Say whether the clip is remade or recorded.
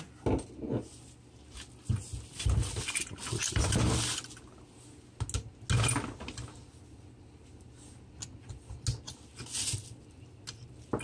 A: recorded